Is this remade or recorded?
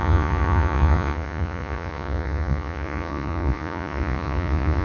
remade